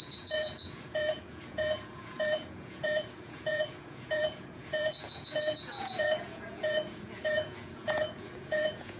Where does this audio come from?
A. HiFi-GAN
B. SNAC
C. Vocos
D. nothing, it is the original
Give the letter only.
C